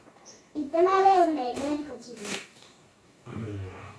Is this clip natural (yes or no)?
no